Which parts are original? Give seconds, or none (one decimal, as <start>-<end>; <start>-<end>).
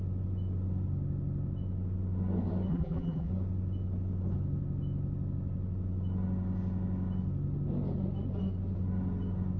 0.0-2.7; 3.3-9.6